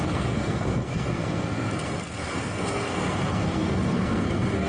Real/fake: fake